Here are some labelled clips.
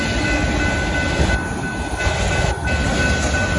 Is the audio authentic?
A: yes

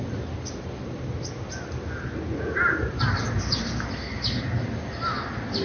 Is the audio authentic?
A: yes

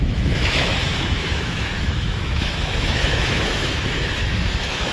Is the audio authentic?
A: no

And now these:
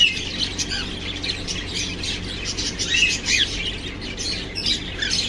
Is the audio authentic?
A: yes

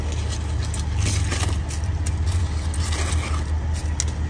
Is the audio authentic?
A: yes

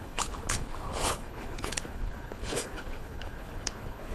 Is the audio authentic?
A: no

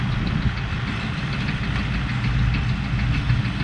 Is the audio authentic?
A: yes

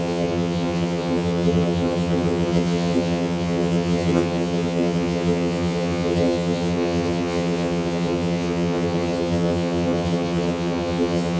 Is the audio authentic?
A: no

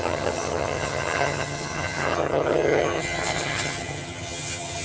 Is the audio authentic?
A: no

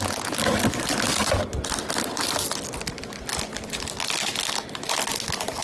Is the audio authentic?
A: yes